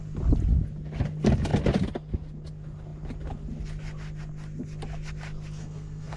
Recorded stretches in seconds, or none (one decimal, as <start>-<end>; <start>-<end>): 0.0-5.6